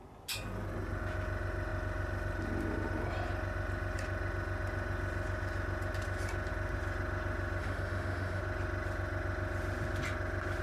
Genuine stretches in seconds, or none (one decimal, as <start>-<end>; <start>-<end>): 0.0-7.6; 8.4-10.6